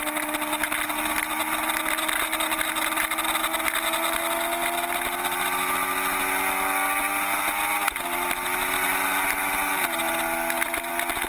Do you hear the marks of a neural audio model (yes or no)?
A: no